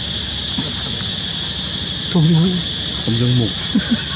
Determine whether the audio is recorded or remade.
recorded